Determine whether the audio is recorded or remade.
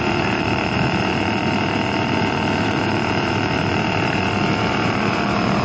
remade